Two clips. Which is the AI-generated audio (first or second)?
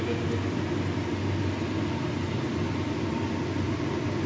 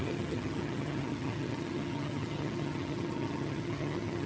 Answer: second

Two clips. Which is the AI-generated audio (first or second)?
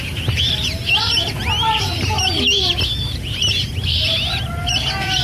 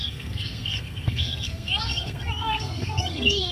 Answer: second